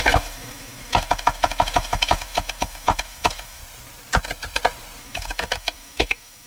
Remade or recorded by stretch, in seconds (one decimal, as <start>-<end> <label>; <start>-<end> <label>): 0.0-3.6 remade; 3.6-5.0 recorded; 5.0-6.5 remade